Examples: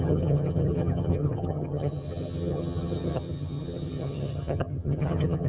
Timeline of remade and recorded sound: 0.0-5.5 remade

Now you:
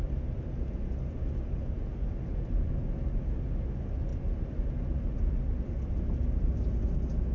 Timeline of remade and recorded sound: 0.0-7.3 recorded

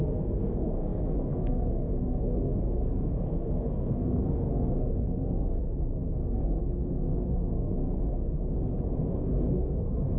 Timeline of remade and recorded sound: 0.0-8.4 remade; 8.4-9.1 recorded; 9.1-10.2 remade

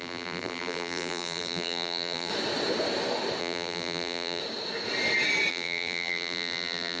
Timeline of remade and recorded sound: 0.0-2.3 remade; 2.3-3.4 recorded; 3.4-4.4 remade; 4.4-5.5 recorded; 5.5-7.0 remade

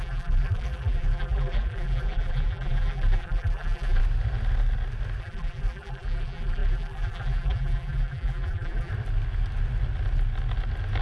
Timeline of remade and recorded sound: 0.0-4.0 remade; 4.0-5.2 recorded; 5.2-8.9 remade; 8.9-11.0 recorded